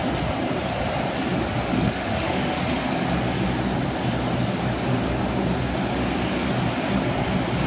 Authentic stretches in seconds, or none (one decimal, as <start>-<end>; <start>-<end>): 0.0-1.7; 2.6-7.7